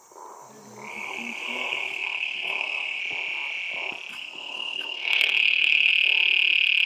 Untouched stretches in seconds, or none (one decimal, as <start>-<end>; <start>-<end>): 0.0-0.9; 3.0-4.1; 5.9-6.9